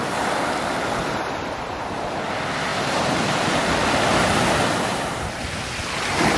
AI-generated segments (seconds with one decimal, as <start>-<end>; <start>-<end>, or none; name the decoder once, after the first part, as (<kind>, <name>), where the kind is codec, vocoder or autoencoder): 2.7-3.5 (vocoder, BigVGAN v2)